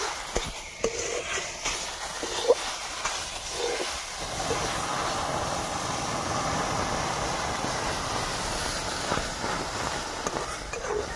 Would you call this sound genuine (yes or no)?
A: yes